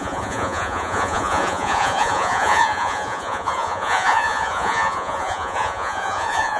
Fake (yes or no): yes